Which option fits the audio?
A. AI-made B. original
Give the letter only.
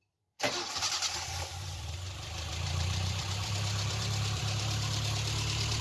A